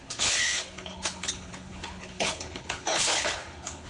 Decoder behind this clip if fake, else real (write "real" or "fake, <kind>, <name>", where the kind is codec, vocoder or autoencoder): fake, codec, HILCodec